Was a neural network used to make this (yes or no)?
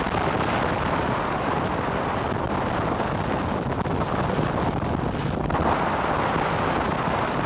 no